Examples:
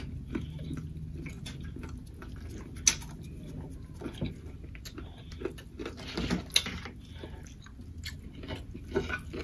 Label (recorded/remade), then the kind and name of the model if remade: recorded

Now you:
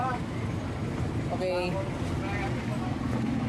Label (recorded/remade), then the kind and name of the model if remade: recorded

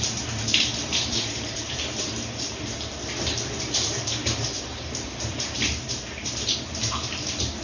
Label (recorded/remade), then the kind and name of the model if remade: remade, vocoder, BigVGAN v2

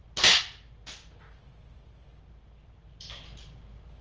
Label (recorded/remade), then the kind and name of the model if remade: recorded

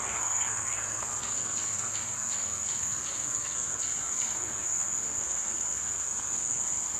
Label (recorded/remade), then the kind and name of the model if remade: remade, codec, SNAC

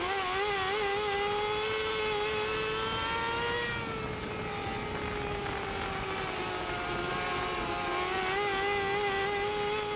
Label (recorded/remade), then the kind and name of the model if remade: recorded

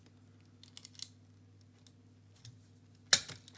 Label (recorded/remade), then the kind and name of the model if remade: recorded